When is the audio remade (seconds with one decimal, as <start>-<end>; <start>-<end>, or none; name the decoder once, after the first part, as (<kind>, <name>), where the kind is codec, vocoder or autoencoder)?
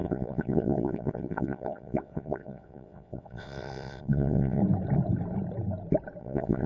0.0-4.6 (vocoder, WaveNeXt); 6.2-6.7